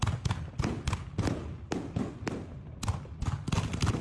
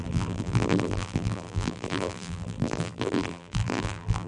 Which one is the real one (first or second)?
first